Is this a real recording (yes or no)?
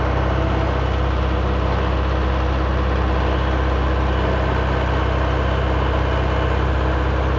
yes